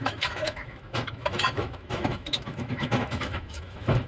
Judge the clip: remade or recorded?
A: remade